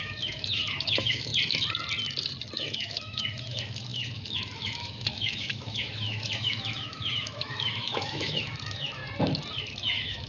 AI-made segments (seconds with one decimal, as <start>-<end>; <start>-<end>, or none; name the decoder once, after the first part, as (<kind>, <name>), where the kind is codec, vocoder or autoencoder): 0.0-1.3 (autoencoder, DAC-VAE); 2.6-9.0; 9.6-10.3